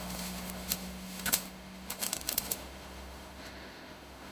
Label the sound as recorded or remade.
remade